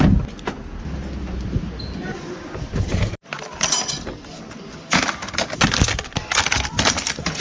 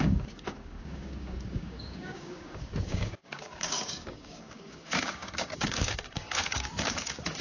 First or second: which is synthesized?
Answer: second